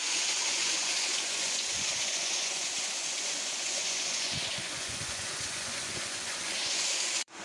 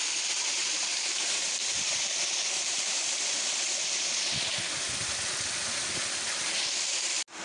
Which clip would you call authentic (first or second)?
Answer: second